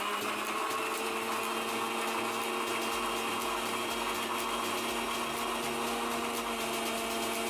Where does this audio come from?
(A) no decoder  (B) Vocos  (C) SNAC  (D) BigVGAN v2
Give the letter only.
A